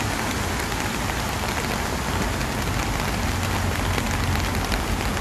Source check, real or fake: real